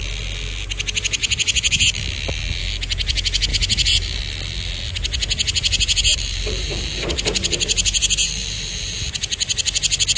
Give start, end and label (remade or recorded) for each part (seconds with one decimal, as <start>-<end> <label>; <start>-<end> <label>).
0.0-3.5 recorded; 3.5-4.2 remade; 4.2-6.1 recorded; 6.1-9.1 remade; 9.1-10.2 recorded

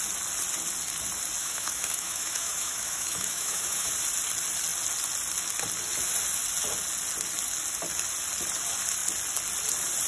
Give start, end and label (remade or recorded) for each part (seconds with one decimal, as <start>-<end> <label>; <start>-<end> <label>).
0.0-1.4 recorded; 1.4-3.9 remade; 3.9-10.1 recorded

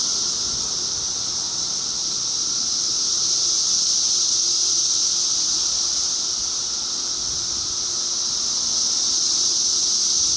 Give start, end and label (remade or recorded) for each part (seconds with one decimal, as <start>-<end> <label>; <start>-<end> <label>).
0.0-2.0 recorded; 2.0-2.5 remade; 2.5-4.8 recorded; 4.8-6.2 remade; 6.2-10.4 recorded

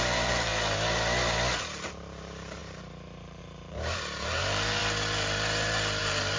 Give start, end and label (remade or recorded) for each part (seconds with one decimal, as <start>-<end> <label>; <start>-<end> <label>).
0.0-0.5 remade; 0.5-1.6 recorded; 1.6-4.8 remade; 4.8-6.0 recorded; 6.0-6.4 remade

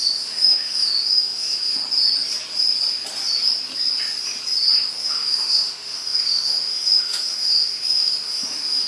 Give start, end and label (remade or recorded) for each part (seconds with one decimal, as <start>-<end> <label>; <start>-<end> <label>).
0.0-1.8 remade; 1.8-4.9 recorded; 4.9-8.9 remade

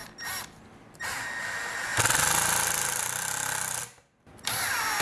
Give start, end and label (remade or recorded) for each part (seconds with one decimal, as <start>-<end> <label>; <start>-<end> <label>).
0.0-5.0 recorded

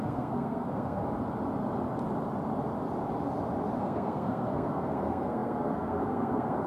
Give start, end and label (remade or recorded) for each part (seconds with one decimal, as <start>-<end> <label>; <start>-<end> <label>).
0.0-1.0 remade; 1.0-3.8 recorded; 3.8-6.7 remade

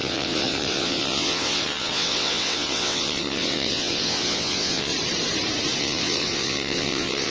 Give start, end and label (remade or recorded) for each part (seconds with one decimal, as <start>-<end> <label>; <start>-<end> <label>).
0.0-4.9 remade; 4.9-5.8 recorded; 5.8-7.3 remade